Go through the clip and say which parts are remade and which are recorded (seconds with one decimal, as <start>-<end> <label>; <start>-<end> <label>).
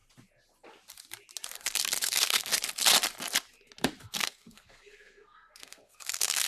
0.0-2.0 recorded; 2.0-2.5 remade; 2.5-4.0 recorded; 4.0-6.5 remade